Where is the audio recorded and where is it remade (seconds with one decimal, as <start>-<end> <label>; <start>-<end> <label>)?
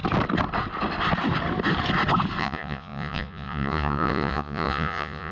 0.0-2.4 recorded; 2.4-5.3 remade